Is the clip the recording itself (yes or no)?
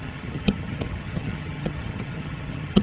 no